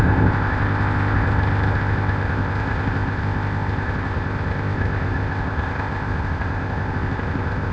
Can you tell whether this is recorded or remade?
remade